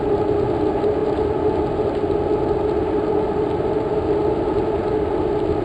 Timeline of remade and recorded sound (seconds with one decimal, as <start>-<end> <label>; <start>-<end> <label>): 0.0-5.6 recorded